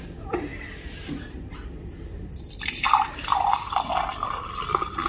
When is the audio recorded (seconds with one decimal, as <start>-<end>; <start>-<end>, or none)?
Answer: 0.0-5.1

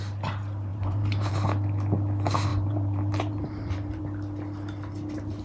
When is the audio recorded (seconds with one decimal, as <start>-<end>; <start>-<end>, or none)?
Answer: 0.0-0.7; 1.3-2.5; 4.0-5.4

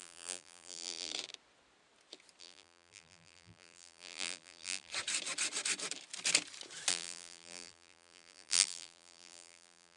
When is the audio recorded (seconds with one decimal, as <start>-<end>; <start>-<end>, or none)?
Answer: 1.1-2.4; 4.9-6.9